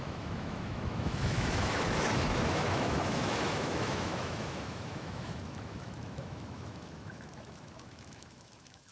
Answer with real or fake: fake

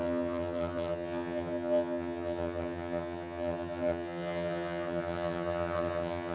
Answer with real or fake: fake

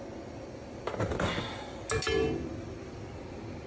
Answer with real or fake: real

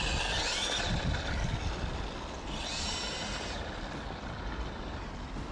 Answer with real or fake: real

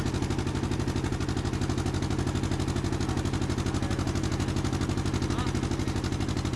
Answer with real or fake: real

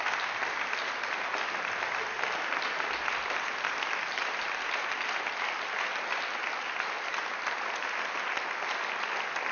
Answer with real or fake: real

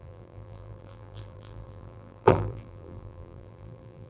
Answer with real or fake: fake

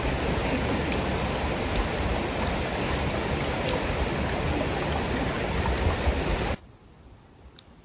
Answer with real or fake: real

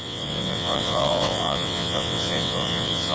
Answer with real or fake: fake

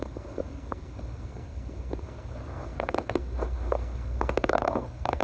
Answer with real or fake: fake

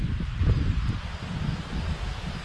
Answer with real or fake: real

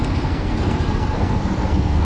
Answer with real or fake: fake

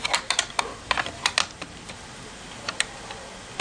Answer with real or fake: real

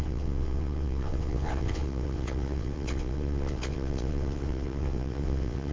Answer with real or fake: fake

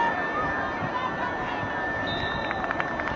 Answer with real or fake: real